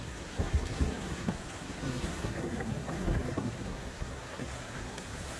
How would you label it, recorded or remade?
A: remade